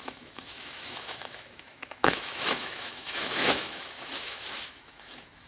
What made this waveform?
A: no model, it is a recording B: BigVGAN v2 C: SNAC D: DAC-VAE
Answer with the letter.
D